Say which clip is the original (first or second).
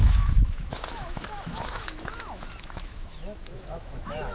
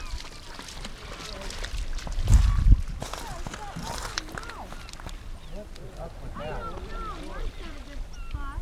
second